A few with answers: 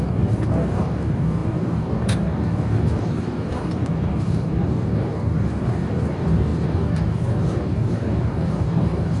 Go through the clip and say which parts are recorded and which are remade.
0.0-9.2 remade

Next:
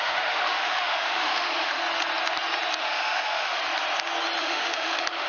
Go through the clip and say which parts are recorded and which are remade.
0.0-1.8 remade; 1.8-2.8 recorded; 2.8-3.6 remade; 3.6-4.4 recorded; 4.4-5.3 remade

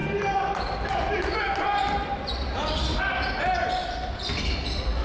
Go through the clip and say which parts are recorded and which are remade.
0.0-3.0 remade; 3.0-3.8 recorded; 3.8-5.0 remade

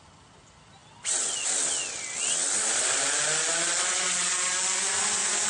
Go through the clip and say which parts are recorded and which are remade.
0.0-5.5 recorded